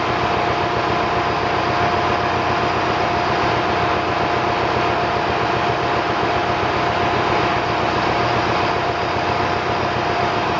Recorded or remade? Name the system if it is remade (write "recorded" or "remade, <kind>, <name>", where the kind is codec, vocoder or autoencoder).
recorded